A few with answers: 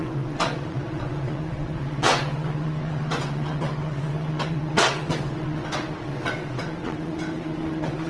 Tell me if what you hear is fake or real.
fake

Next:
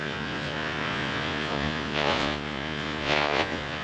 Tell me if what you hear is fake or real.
fake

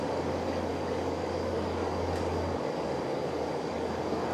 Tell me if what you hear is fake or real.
fake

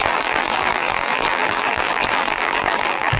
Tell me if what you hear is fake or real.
fake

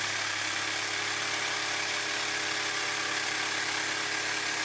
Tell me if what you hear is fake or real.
real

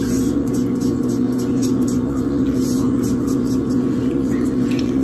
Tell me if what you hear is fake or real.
fake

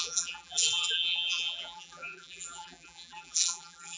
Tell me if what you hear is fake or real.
fake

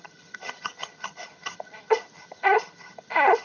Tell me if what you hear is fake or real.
fake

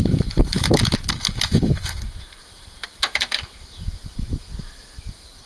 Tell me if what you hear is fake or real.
fake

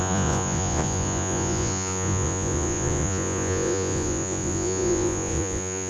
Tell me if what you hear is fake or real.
fake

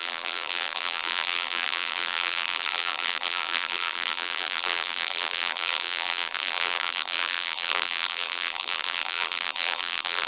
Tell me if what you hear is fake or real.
fake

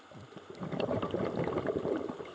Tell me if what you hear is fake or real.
real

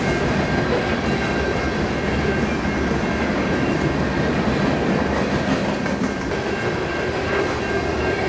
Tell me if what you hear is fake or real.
real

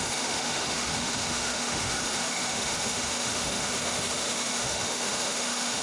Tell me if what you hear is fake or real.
fake